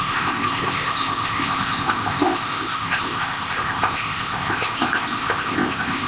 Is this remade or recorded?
remade